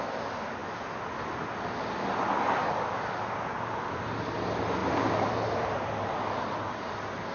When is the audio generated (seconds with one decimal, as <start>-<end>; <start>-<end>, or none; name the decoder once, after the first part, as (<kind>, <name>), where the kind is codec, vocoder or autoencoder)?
4.8-6.2 (vocoder, BigVGAN v2)